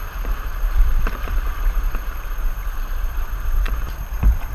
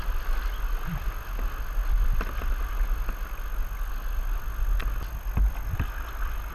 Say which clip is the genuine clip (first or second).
second